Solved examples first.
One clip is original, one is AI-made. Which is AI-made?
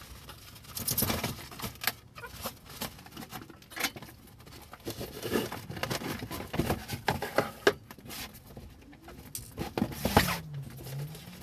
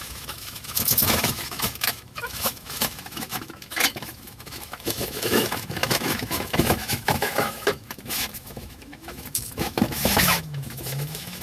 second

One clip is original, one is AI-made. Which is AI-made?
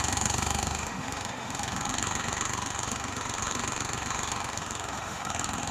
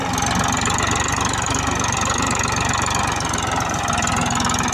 first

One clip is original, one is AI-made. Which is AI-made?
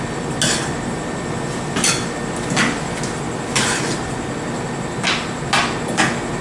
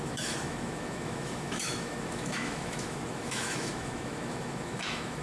second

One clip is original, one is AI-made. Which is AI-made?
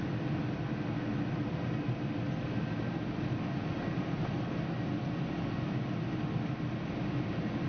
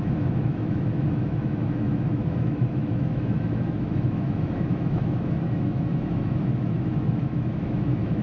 second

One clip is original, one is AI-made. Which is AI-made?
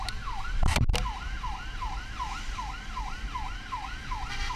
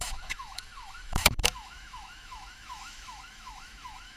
second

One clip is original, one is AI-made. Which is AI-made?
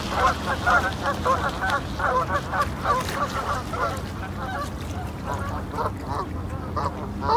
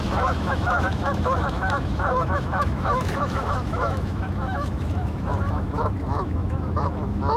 second